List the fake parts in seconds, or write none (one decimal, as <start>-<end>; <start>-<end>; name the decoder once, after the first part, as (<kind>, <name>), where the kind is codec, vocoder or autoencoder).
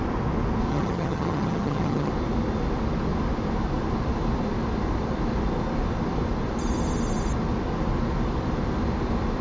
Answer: 0.7-2.1 (vocoder, HiFi-GAN)